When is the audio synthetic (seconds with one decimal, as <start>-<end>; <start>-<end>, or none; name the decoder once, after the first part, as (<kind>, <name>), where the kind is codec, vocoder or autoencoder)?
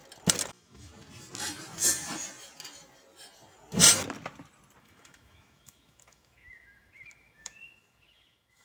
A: 0.5-0.9 (autoencoder, DAC-VAE); 4.8-8.6